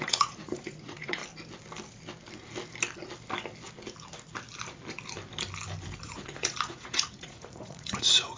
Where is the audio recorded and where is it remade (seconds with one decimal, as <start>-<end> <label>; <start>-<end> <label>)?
0.0-1.2 remade; 1.2-6.0 recorded; 6.0-8.4 remade